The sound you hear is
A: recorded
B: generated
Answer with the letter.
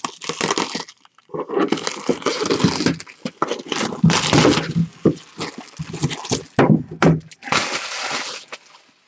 A